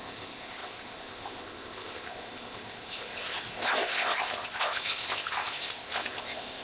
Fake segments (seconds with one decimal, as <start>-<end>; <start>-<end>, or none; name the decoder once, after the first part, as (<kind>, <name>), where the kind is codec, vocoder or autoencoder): 0.0-6.6 (codec, ZipCodec)